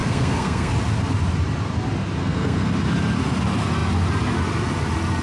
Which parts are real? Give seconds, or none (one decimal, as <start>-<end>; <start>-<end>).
0.7-2.2; 2.7-5.2